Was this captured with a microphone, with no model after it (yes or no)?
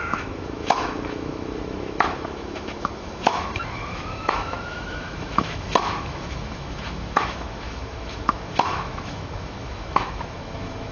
no